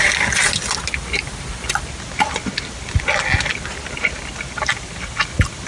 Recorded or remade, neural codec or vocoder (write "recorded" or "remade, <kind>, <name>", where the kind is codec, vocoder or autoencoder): recorded